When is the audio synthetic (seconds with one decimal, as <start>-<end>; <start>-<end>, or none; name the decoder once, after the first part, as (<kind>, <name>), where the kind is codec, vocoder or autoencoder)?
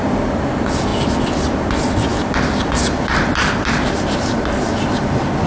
none